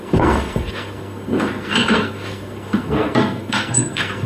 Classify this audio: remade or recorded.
remade